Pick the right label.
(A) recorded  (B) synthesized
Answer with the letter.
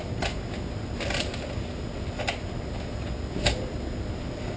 A